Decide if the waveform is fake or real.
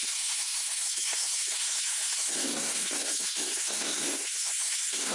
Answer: fake